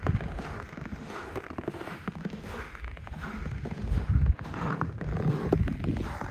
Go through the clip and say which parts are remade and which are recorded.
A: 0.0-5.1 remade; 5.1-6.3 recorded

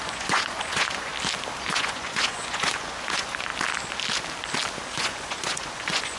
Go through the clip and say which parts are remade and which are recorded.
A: 0.0-1.1 remade; 1.1-1.7 recorded; 1.7-3.5 remade; 3.5-4.9 recorded; 4.9-6.2 remade

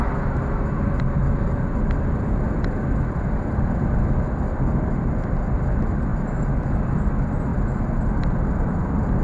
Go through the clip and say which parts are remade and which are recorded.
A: 0.0-9.2 recorded

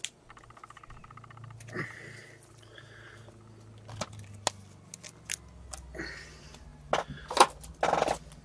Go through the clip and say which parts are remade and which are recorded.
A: 0.0-8.4 recorded

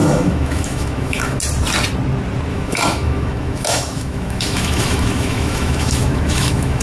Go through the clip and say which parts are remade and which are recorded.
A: 0.0-1.4 remade; 1.4-2.5 recorded; 2.5-6.8 remade

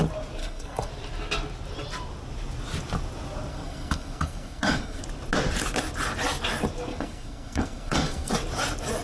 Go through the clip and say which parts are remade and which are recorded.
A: 0.0-0.4 recorded; 0.4-0.9 remade; 0.9-3.5 recorded; 3.5-5.0 remade; 5.0-6.9 recorded; 6.9-8.3 remade; 8.3-9.0 recorded

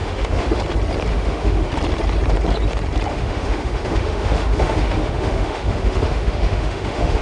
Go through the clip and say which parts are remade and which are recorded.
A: 0.0-0.6 remade; 0.6-1.1 recorded; 1.1-1.7 remade; 1.7-3.1 recorded; 3.1-7.2 remade